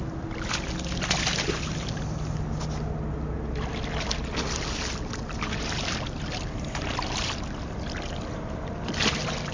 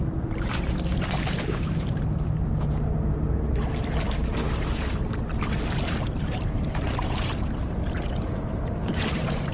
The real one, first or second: first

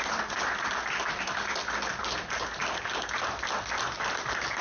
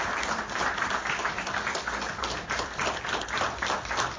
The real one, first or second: first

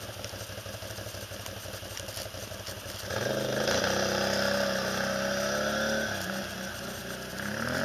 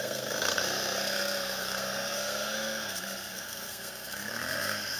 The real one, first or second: first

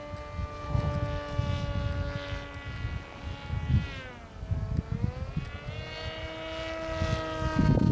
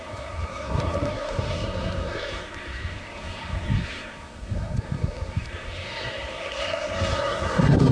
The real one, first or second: first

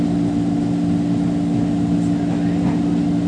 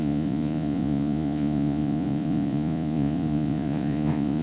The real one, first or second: first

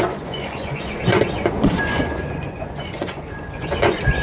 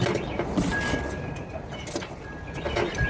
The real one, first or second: second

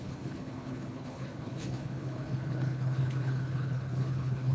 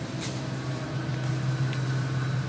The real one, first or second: second